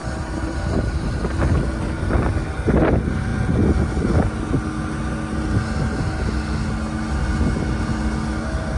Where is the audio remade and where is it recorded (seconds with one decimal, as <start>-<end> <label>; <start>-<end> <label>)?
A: 0.0-8.8 recorded

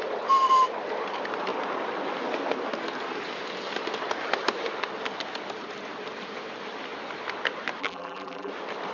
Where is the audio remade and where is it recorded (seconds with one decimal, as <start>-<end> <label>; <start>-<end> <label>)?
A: 0.0-7.8 recorded; 7.8-8.5 remade; 8.5-8.9 recorded

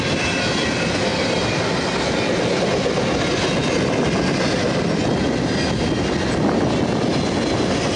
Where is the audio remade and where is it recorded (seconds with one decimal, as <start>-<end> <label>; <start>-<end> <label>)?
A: 0.0-8.0 recorded

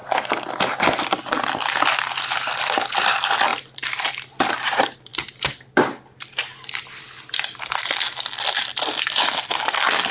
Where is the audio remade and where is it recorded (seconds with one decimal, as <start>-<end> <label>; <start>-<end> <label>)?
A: 0.0-2.2 recorded; 2.2-5.1 remade; 5.1-5.7 recorded; 5.7-6.5 remade; 6.5-7.0 recorded; 7.0-10.1 remade